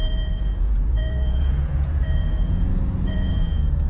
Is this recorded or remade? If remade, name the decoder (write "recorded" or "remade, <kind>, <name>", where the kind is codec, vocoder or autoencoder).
remade, vocoder, Vocos